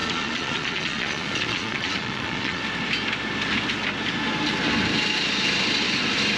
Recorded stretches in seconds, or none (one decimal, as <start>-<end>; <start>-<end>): 2.6-6.4